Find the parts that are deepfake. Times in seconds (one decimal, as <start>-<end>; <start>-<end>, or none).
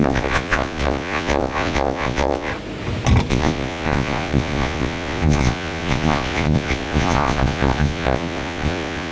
0.0-2.5; 3.3-9.1